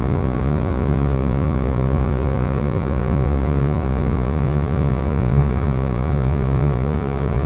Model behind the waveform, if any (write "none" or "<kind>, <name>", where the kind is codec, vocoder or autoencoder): vocoder, Vocos